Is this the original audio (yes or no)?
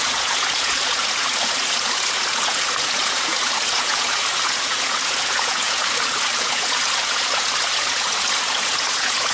no